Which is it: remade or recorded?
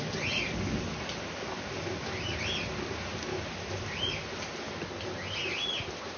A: recorded